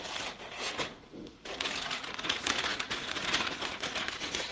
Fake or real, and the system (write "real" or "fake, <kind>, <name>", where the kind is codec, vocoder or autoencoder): fake, vocoder, Vocos